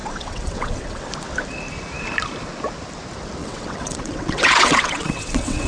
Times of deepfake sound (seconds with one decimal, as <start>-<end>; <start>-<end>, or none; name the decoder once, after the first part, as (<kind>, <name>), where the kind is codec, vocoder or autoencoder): 0.0-1.1 (vocoder, WaveNeXt); 3.4-5.7

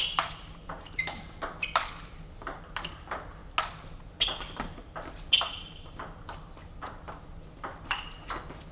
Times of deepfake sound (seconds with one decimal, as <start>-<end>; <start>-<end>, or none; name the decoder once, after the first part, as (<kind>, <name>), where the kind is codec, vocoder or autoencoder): none

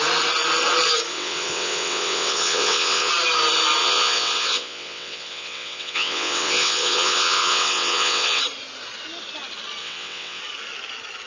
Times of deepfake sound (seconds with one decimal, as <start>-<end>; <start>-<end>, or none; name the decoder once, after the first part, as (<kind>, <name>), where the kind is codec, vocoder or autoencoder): 1.1-3.1 (vocoder, WaveNeXt); 3.8-8.4; 9.8-10.4

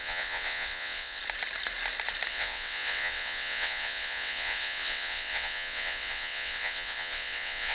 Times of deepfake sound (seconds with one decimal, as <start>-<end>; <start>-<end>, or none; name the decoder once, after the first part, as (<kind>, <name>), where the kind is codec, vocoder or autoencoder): 0.0-1.2 (vocoder, WaveNeXt); 2.3-7.7